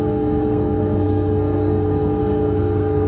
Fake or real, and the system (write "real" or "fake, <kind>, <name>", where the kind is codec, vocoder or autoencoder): fake, codec, SNAC